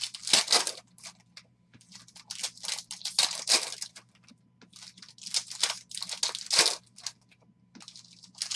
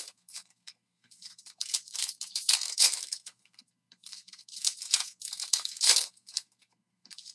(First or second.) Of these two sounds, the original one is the first